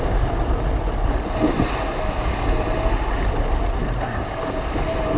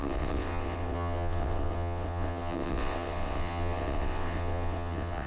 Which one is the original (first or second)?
first